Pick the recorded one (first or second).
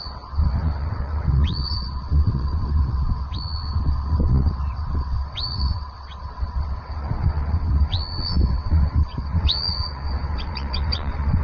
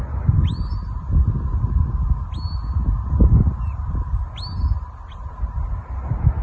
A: second